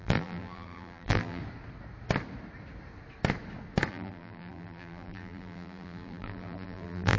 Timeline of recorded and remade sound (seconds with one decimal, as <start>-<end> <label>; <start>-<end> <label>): 0.0-1.4 remade; 1.4-3.9 recorded; 3.9-7.2 remade